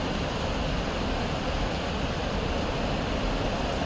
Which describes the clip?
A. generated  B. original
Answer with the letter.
B